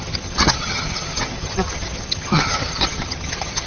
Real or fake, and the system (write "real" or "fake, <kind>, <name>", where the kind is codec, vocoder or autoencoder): fake, vocoder, HiFi-GAN